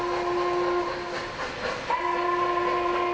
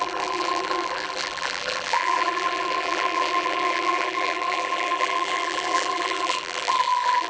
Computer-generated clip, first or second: second